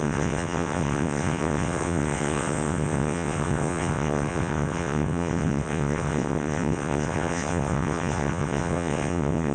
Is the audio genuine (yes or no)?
no